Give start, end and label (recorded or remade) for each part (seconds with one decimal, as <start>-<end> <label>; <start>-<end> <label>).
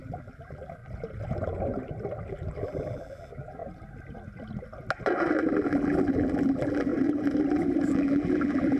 0.0-0.8 remade; 0.8-2.3 recorded; 2.3-3.6 remade; 3.6-5.5 recorded; 5.5-6.9 remade; 6.9-7.9 recorded; 7.9-8.8 remade